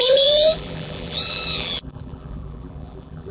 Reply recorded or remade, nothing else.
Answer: remade